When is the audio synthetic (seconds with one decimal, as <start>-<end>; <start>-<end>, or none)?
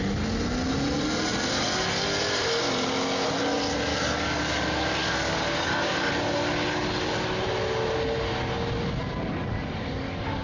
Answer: 3.9-4.4; 5.0-6.1